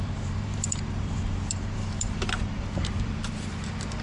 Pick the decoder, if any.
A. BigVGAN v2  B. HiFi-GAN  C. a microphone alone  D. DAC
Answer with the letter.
A